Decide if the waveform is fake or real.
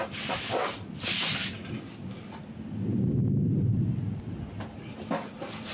real